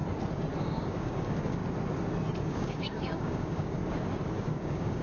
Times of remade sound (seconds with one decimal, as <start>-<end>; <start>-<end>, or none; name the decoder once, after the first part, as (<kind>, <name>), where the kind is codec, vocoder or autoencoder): 0.6-1.6 (codec, DAC); 2.4-3.8; 4.3-5.0